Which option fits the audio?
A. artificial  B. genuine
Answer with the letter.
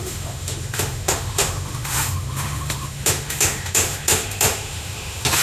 A